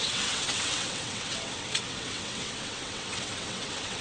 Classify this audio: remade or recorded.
remade